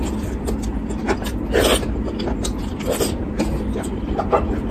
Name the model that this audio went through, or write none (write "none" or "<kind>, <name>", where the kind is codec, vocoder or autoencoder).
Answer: none